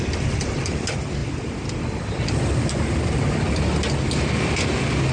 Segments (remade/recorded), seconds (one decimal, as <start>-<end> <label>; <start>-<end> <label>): 0.0-5.1 recorded